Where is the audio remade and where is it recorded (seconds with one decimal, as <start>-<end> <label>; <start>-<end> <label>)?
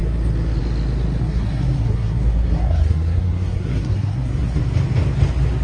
0.0-1.2 recorded; 1.2-4.6 remade; 4.6-5.6 recorded